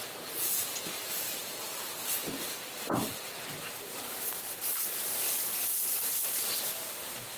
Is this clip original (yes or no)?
no